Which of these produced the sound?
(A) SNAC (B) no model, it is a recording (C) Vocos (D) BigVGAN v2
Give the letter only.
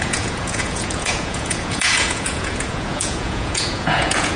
C